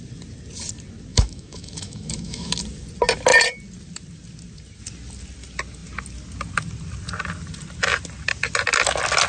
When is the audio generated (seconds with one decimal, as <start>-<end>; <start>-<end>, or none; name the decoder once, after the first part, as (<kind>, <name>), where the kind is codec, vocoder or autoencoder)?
1.1-2.5 (autoencoder, DAC-VAE)